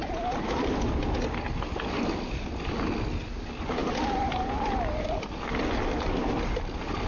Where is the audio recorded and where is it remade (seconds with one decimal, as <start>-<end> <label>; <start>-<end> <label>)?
0.0-7.1 recorded